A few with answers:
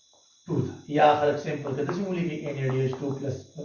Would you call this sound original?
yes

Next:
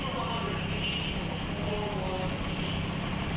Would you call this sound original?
yes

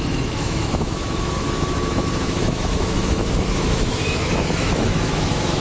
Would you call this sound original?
no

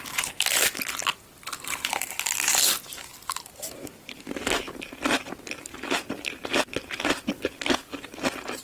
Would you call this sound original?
yes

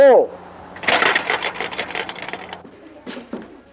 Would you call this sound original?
yes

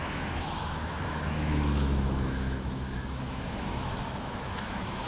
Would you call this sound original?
no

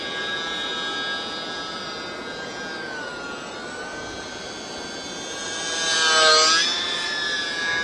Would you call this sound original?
yes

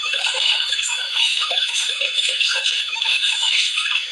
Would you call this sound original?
no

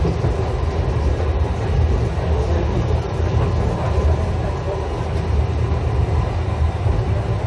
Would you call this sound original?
yes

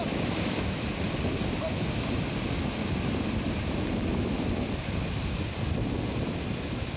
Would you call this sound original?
yes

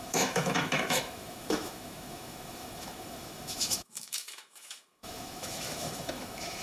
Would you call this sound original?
no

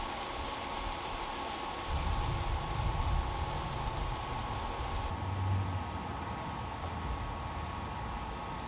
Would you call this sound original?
yes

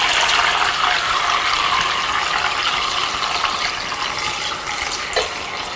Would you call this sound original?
yes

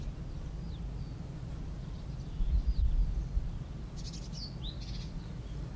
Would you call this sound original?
yes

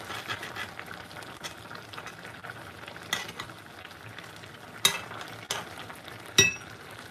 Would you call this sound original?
yes